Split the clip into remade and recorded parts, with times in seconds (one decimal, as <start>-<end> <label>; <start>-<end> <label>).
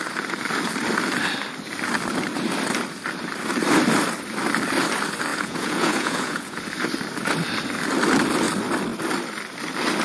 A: 0.0-5.3 recorded; 5.3-6.6 remade; 6.6-10.0 recorded